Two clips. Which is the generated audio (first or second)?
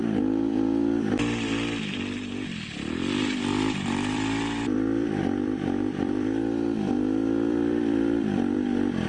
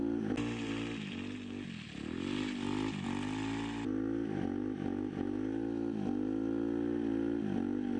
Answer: first